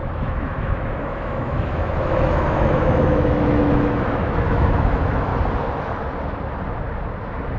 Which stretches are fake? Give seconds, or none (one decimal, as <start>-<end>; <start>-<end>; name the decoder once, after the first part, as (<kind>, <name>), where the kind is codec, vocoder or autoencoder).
0.0-5.3 (autoencoder, DAC-VAE)